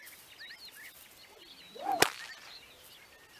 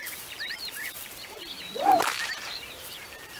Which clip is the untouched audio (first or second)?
first